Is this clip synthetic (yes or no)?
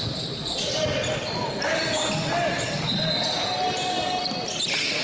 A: no